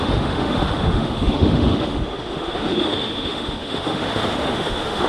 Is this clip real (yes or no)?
no